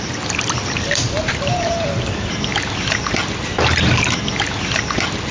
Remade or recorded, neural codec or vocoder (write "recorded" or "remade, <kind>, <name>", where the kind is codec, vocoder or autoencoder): recorded